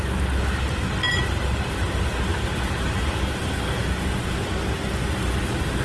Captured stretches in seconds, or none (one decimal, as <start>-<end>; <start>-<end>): 0.0-2.3; 3.8-5.8